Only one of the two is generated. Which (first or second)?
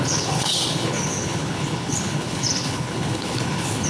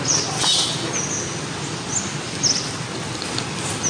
first